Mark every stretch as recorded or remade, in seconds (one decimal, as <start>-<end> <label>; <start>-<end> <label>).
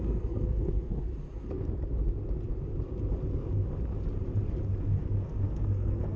0.0-1.1 remade; 1.1-4.8 recorded; 4.8-6.2 remade